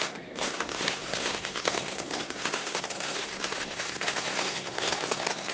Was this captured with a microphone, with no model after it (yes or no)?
no